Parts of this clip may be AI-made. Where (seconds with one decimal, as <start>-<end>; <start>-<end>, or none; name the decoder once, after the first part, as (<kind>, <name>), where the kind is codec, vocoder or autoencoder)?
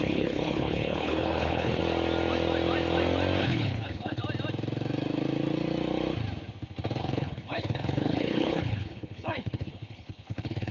0.0-1.8 (codec, HILCodec); 3.4-4.2; 7.0-10.7